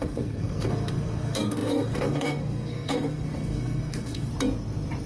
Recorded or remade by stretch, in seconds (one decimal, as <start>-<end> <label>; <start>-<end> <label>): 0.0-4.3 remade; 4.3-5.1 recorded